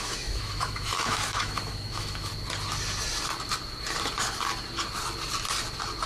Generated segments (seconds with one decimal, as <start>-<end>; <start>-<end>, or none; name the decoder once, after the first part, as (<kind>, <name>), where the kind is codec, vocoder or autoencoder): 0.0-2.3 (autoencoder, DAC-VAE)